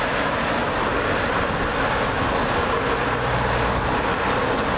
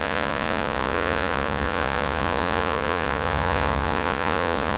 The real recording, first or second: first